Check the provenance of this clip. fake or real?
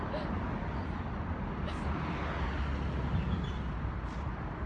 real